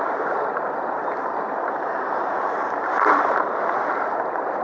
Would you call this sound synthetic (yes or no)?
yes